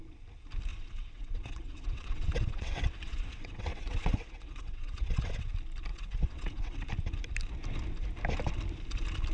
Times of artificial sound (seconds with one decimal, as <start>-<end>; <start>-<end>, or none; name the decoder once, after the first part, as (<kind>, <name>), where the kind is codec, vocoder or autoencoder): 0.7-5.5 (vocoder, WaveNeXt); 5.9-6.9